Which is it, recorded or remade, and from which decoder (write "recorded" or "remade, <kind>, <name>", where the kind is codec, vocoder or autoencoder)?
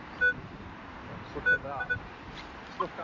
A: remade, vocoder, BigVGAN v2